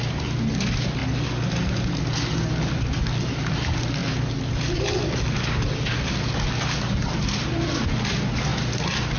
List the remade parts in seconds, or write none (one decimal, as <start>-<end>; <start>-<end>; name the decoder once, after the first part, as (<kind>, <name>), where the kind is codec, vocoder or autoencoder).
none